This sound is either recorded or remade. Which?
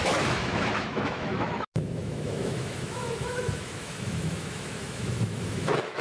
remade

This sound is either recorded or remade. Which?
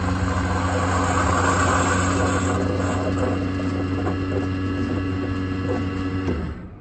recorded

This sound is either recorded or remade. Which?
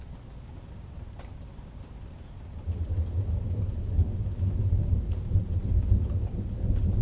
recorded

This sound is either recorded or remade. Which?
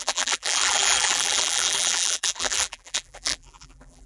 remade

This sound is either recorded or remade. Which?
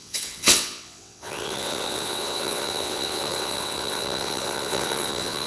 remade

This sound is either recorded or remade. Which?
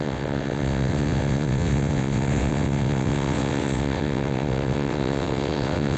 remade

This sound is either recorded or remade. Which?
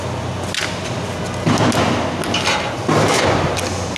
recorded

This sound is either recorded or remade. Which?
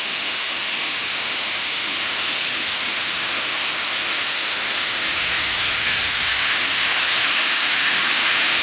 remade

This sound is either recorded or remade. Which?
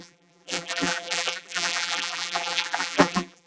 remade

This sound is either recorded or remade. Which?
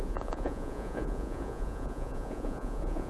remade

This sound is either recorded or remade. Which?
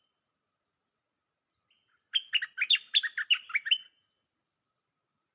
recorded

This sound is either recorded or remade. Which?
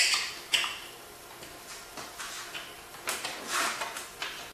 recorded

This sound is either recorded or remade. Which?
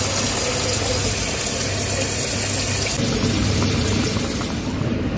recorded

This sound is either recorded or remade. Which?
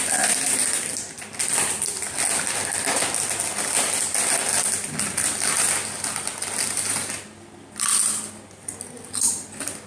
recorded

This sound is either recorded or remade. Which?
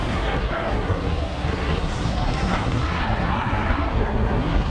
remade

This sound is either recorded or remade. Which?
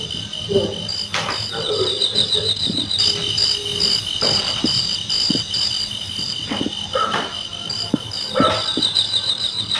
recorded